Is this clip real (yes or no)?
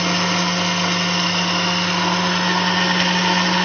yes